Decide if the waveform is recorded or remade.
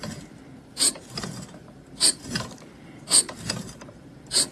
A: remade